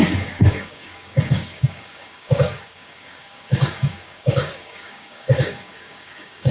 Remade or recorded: remade